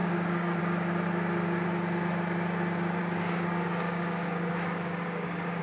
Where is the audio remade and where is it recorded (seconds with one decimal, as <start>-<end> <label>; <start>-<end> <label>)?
0.0-0.6 remade; 0.6-3.0 recorded; 3.0-5.6 remade